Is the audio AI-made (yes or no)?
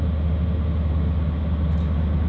no